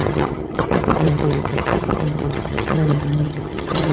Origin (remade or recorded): remade